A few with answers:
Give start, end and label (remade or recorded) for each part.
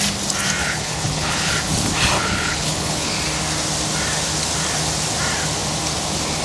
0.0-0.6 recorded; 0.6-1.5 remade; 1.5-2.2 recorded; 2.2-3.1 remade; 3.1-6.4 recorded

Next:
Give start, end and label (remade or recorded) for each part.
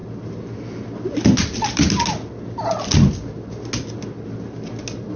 0.0-5.2 recorded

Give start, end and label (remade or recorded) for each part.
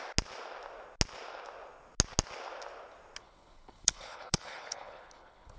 0.0-3.2 recorded; 3.2-5.6 remade